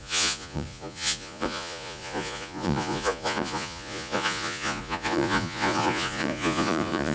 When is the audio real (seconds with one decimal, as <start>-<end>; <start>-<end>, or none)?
none